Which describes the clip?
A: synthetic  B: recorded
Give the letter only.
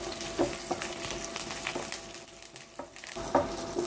B